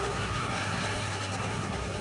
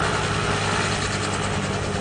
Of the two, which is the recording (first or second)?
second